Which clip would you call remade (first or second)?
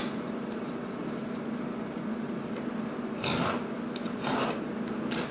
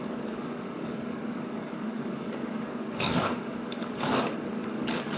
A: second